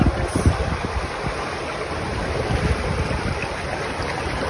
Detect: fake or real real